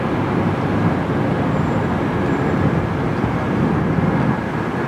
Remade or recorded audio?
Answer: recorded